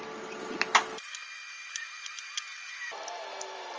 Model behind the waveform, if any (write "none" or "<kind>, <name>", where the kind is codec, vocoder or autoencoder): none